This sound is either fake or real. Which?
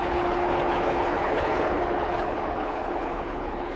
fake